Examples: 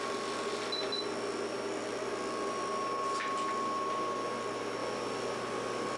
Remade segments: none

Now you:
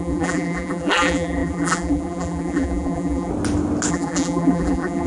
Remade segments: 0.0-3.3 (vocoder, BigVGAN v2); 3.9-5.1

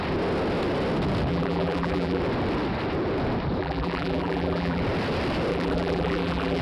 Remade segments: 1.3-2.2 (vocoder, BigVGAN v2); 3.6-4.8; 5.5-6.6

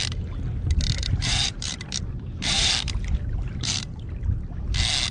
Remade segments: 1.0-4.1 (vocoder, BigVGAN v2)

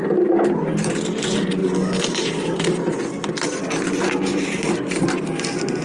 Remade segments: 4.3-5.2 (vocoder, BigVGAN v2)

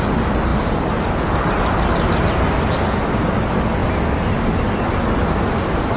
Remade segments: none